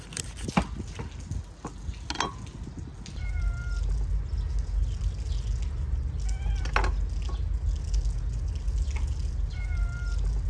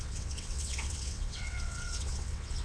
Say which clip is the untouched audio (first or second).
first